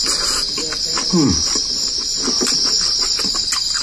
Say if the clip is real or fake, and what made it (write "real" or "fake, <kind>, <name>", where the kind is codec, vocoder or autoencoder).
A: real